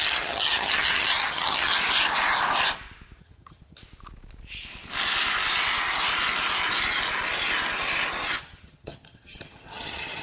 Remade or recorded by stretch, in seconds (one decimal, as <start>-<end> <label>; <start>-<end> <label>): 0.0-1.7 remade; 1.7-3.2 recorded; 3.2-3.8 remade; 3.8-8.4 recorded; 8.4-10.2 remade